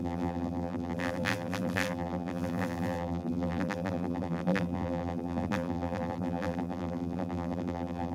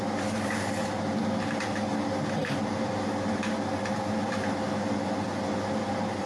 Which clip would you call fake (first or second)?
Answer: first